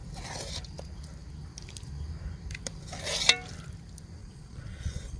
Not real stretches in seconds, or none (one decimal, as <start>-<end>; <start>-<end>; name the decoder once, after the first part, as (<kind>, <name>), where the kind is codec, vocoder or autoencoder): 4.2-5.2 (vocoder, Vocos)